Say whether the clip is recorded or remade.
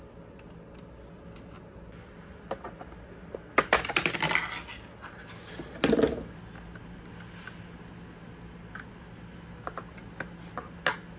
recorded